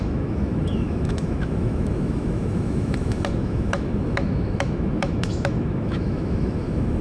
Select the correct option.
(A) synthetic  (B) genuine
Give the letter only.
A